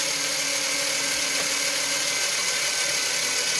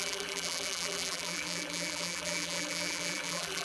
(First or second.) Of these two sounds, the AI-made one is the second